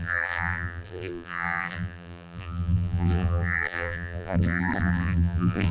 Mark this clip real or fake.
fake